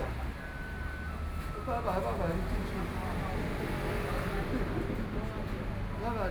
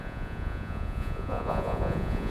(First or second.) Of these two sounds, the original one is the first